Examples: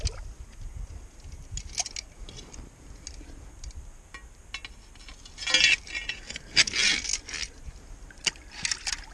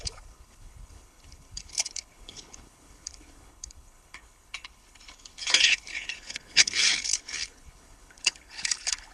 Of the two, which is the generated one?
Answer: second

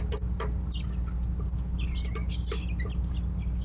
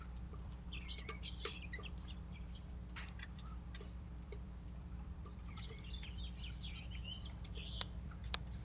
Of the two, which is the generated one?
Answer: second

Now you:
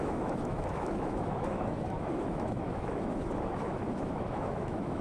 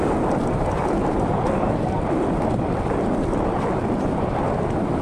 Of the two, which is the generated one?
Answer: first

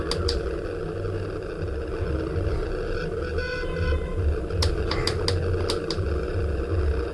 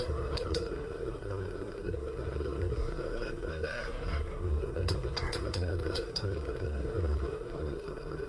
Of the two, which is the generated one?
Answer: second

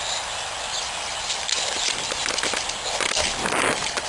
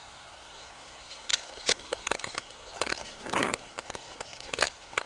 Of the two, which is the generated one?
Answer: second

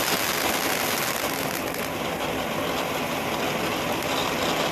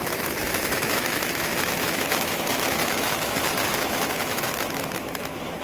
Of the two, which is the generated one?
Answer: second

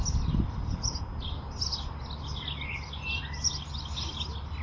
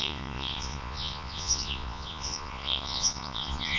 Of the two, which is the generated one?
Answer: second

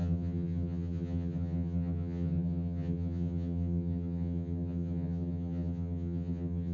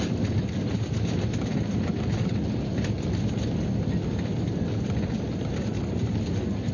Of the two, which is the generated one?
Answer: first